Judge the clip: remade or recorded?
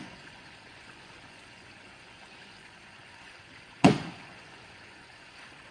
remade